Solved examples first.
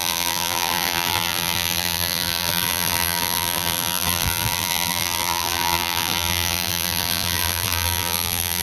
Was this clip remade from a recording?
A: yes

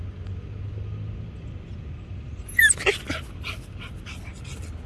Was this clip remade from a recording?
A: no